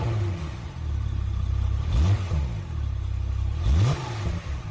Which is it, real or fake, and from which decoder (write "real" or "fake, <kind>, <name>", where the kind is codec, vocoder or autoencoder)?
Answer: real